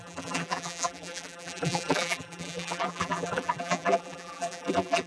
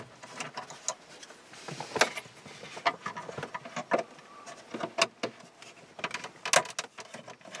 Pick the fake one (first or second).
first